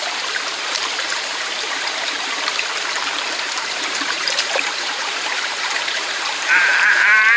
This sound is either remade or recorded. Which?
remade